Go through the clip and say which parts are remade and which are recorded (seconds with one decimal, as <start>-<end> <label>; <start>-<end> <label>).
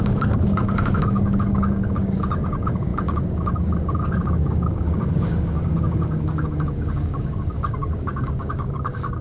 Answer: 0.0-9.2 remade